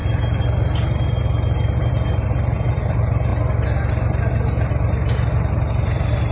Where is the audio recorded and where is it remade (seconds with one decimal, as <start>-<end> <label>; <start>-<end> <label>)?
0.0-6.3 recorded